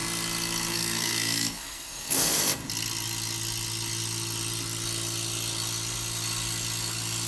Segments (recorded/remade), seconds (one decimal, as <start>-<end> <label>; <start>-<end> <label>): 0.0-0.7 recorded; 0.7-2.6 remade; 2.6-7.3 recorded